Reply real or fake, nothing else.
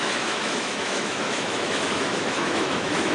fake